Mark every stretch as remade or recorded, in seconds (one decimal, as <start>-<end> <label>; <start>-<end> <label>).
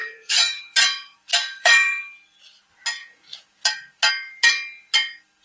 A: 0.0-2.0 remade; 2.0-3.0 recorded; 3.0-4.1 remade; 4.1-5.4 recorded